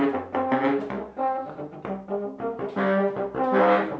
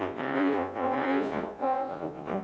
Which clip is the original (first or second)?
first